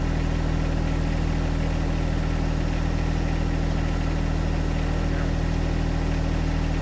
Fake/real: real